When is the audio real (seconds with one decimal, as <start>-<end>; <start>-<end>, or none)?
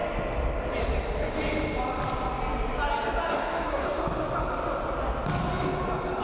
0.0-3.3; 4.0-6.2